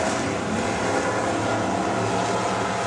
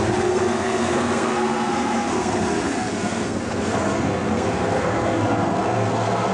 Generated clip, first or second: second